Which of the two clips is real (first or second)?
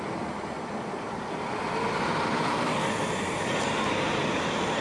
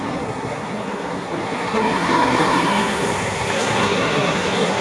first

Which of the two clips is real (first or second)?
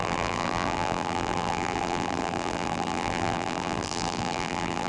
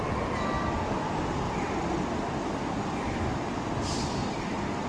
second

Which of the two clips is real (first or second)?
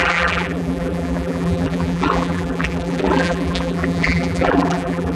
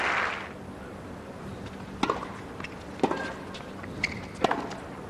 second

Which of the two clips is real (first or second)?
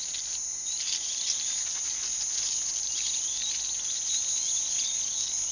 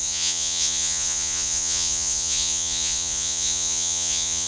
first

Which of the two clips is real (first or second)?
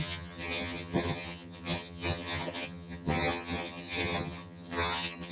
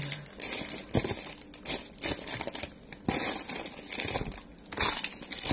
second